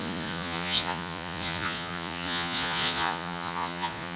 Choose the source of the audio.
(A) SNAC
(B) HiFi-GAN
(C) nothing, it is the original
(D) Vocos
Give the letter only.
D